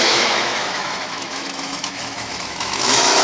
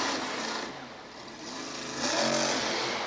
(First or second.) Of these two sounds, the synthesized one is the first